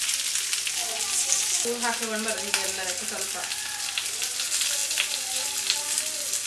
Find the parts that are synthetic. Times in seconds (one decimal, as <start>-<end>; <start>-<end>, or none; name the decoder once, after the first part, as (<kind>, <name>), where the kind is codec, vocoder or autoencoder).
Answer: none